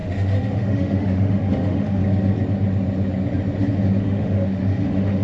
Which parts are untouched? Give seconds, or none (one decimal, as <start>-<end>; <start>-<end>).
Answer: 2.0-4.0